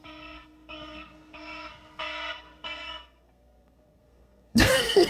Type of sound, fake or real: fake